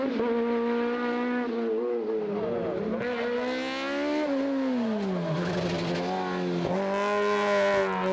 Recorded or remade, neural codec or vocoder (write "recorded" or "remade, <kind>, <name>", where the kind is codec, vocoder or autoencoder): recorded